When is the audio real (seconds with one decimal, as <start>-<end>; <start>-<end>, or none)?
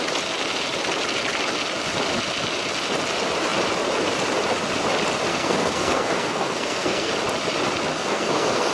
0.0-5.3; 7.1-7.9